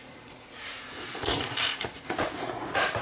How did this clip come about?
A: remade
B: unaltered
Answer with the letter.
A